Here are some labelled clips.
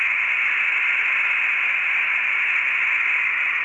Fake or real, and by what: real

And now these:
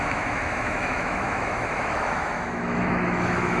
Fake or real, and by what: fake, autoencoder, DAC-VAE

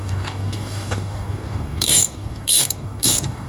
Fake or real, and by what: fake, codec, DAC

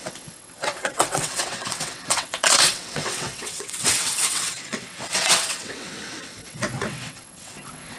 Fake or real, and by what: fake, vocoder, WaveNeXt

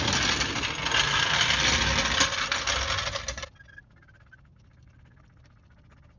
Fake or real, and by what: real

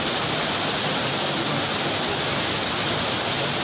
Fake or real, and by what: real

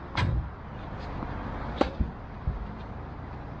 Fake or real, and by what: real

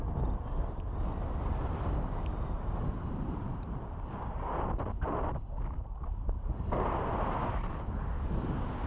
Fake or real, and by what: real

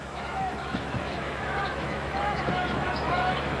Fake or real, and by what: fake, autoencoder, DAC-VAE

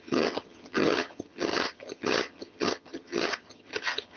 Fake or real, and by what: fake, vocoder, HiFi-GAN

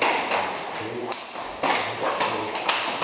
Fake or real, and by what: real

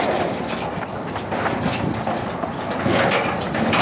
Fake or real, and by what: real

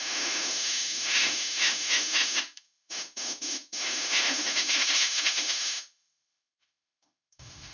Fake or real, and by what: fake, autoencoder, DAC-VAE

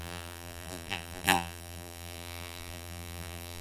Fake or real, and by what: fake, vocoder, BigVGAN v2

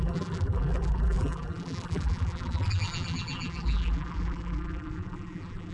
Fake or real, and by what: fake, vocoder, BigVGAN v2